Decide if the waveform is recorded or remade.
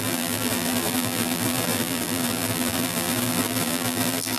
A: remade